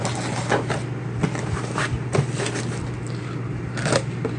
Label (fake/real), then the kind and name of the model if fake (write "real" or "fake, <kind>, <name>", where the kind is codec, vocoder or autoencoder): real